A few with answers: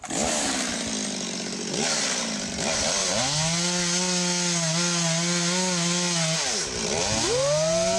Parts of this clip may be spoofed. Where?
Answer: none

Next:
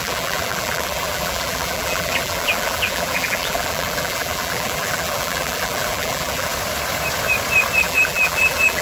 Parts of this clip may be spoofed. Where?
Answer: 0.0-6.5 (vocoder, BigVGAN v2); 7.8-8.8

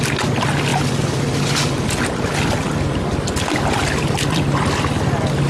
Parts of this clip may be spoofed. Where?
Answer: none

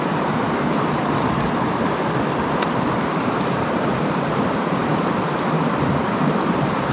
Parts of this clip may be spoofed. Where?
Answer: 0.0-1.0 (vocoder, BigVGAN v2); 4.0-6.9

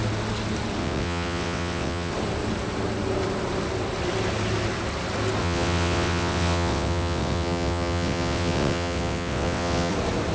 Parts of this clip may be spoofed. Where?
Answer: 0.8-2.1 (vocoder, WaveNeXt); 5.4-9.9